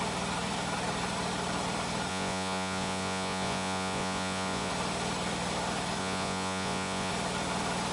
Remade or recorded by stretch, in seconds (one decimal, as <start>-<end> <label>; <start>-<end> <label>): 0.0-2.1 recorded; 2.1-4.7 remade; 4.7-6.0 recorded; 6.0-7.1 remade; 7.1-7.9 recorded